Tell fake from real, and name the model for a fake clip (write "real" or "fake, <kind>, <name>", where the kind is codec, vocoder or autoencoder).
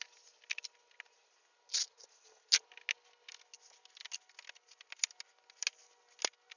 real